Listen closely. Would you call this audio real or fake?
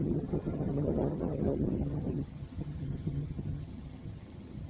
fake